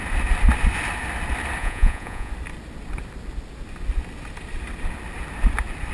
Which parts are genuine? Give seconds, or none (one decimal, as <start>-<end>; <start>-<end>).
0.0-1.6; 2.3-5.9